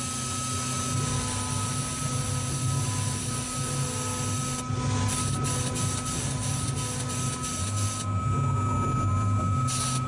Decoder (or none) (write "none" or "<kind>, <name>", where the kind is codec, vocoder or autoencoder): none